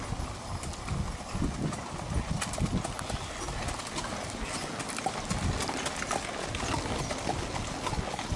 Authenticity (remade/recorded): recorded